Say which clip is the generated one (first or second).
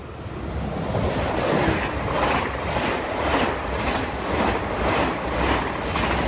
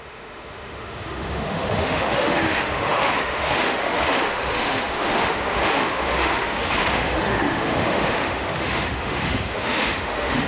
second